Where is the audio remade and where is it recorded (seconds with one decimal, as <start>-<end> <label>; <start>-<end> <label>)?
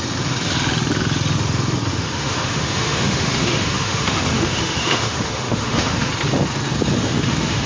0.0-1.9 recorded; 1.9-6.1 remade; 6.1-7.0 recorded; 7.0-7.7 remade